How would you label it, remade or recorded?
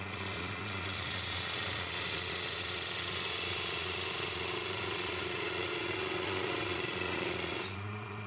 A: remade